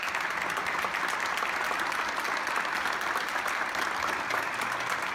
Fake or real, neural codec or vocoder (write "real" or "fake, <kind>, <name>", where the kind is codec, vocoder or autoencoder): real